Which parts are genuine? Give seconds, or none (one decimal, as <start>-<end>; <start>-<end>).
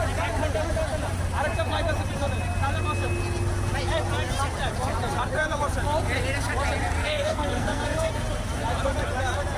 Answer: 0.0-7.0; 8.1-9.6